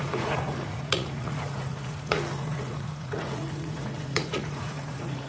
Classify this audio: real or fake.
fake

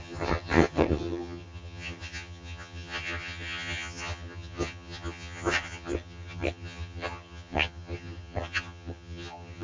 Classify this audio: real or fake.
fake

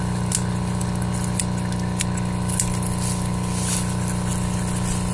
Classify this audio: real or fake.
real